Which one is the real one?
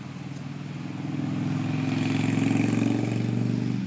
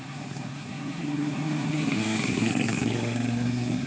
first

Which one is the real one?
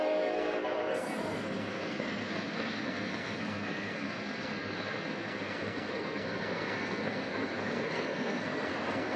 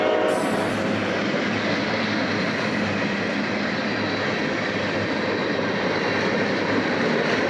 second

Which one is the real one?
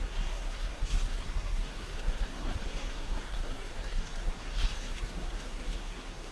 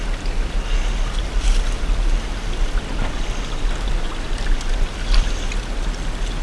second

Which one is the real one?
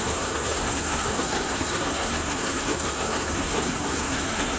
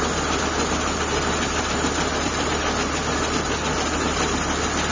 second